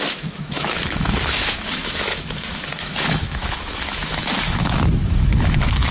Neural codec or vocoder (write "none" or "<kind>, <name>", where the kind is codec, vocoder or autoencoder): autoencoder, DAC-VAE